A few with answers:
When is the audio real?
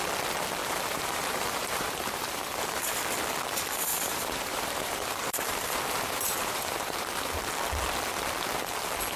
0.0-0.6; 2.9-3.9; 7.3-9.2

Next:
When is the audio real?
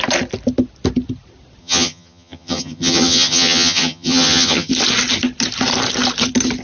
0.0-1.6; 4.7-6.6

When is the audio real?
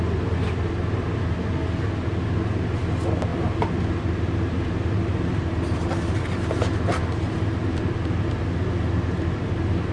0.0-5.1; 6.5-9.9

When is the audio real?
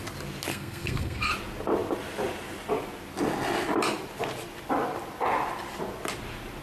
0.0-0.5; 1.3-6.6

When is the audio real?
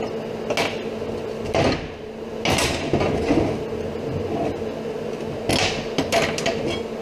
0.0-7.0